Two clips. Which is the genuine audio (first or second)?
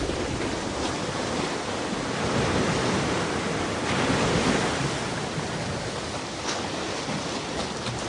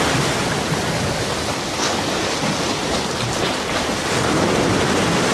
first